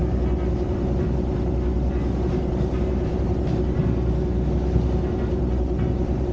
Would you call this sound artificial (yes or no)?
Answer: no